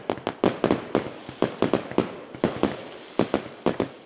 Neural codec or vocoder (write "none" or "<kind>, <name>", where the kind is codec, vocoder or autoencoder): none